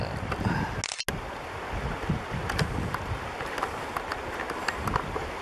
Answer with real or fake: real